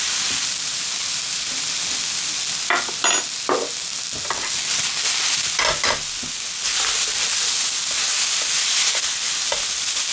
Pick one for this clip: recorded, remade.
recorded